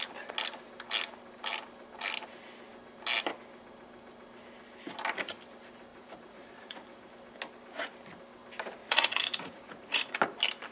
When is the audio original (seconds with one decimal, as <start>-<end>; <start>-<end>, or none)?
0.0-5.9; 7.1-8.8; 10.2-10.7